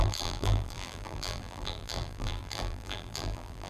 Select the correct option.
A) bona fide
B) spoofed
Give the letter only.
B